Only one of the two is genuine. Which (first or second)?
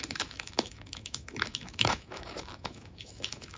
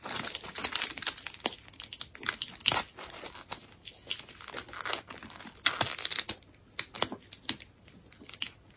second